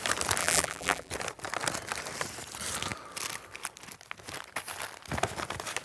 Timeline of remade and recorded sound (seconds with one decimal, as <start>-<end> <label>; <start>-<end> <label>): 0.0-0.4 recorded; 0.4-1.1 remade; 1.1-5.8 recorded